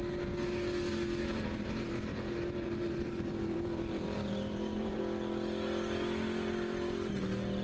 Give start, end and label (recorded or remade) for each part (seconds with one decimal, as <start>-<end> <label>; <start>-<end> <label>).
0.0-1.2 recorded; 1.2-5.0 remade; 5.0-7.6 recorded